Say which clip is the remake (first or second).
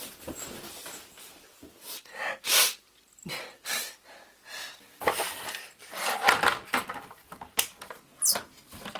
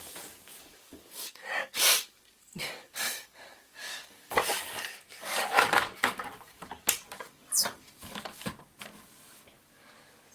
second